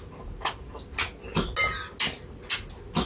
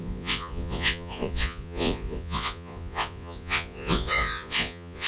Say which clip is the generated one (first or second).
second